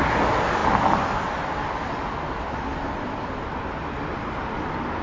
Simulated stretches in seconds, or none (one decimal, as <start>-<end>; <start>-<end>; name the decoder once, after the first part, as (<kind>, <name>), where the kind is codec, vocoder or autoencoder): none